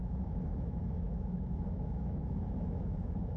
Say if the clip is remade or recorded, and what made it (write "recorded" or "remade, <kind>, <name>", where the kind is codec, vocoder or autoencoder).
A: remade, autoencoder, DAC-VAE